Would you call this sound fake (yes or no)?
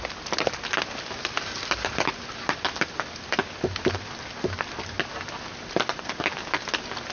no